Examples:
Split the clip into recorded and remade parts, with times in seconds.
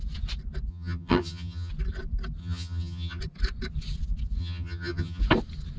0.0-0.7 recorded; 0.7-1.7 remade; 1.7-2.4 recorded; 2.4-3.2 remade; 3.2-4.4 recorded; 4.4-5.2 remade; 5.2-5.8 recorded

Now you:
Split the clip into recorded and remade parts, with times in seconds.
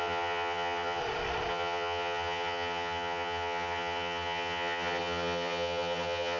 0.0-1.0 remade; 1.0-1.5 recorded; 1.5-6.4 remade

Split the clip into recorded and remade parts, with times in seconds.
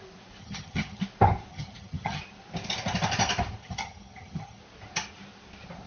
0.0-0.4 recorded; 0.4-1.0 remade; 1.0-1.5 recorded; 1.5-2.2 remade; 2.2-3.6 recorded; 3.6-4.6 remade; 4.6-5.9 recorded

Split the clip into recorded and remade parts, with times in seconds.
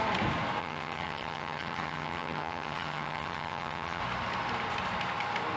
0.0-0.6 recorded; 0.6-4.0 remade; 4.0-5.6 recorded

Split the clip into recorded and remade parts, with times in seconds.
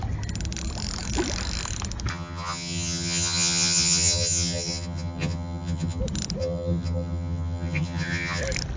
0.0-2.1 recorded; 2.1-6.0 remade; 6.0-6.4 recorded; 6.4-8.4 remade; 8.4-8.8 recorded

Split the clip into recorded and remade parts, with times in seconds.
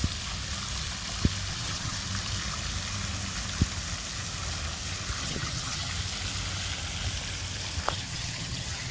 0.0-1.5 recorded; 1.5-2.0 remade; 2.0-5.2 recorded; 5.2-5.9 remade; 5.9-7.9 recorded; 7.9-8.9 remade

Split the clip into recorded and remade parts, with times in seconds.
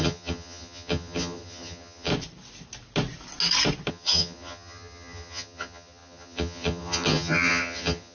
0.0-2.1 remade; 2.1-3.9 recorded; 3.9-8.1 remade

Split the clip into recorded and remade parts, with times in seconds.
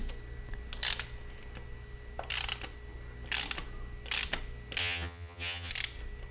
0.0-4.8 recorded; 4.8-5.7 remade; 5.7-6.3 recorded